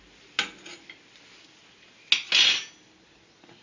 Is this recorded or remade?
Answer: recorded